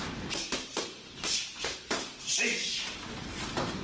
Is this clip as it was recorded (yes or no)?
no